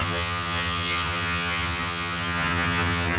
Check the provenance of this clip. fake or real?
fake